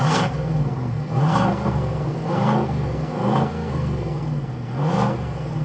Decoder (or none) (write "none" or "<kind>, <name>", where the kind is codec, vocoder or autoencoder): codec, SNAC